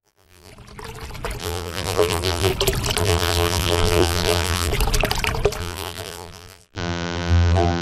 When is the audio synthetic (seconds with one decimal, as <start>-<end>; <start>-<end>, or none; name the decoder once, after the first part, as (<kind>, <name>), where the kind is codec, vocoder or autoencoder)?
0.0-0.5 (vocoder, BigVGAN v2); 1.4-2.5; 3.0-4.7; 5.6-7.8